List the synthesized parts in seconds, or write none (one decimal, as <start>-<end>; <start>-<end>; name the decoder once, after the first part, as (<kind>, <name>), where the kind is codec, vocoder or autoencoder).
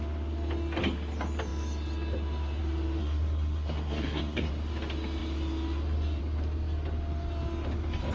3.0-4.5 (codec, SNAC)